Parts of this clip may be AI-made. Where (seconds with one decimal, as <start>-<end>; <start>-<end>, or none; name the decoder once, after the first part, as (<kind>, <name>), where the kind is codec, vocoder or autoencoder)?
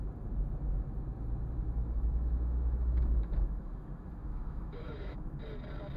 1.8-5.4 (autoencoder, DAC-VAE)